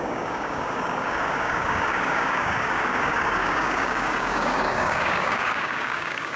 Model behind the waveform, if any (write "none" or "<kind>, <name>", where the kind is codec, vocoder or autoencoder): codec, DAC